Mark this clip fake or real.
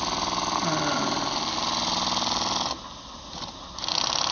real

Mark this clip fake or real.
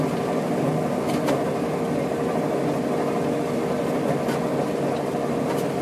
real